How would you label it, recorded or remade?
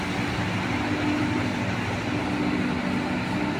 recorded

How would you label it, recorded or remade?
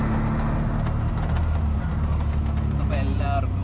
recorded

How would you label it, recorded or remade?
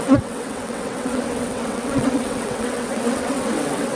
remade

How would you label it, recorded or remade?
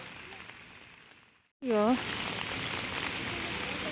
recorded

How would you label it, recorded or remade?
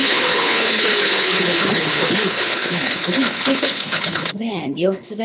remade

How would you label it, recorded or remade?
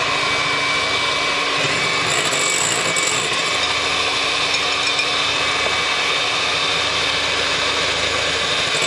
recorded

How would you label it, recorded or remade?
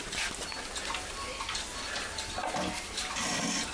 recorded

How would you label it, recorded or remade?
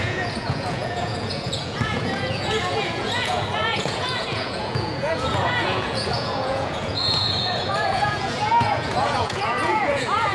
remade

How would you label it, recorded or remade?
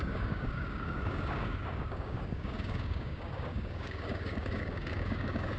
remade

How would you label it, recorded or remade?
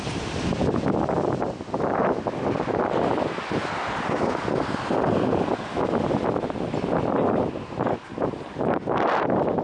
recorded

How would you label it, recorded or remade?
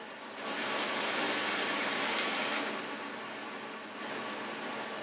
recorded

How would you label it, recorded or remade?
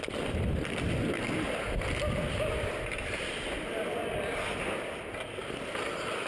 recorded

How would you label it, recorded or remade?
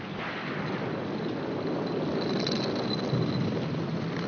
recorded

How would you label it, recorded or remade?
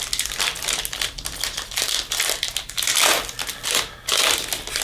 recorded